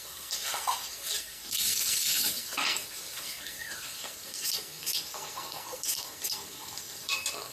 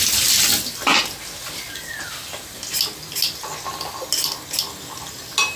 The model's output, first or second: first